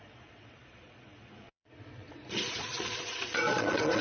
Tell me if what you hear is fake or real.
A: fake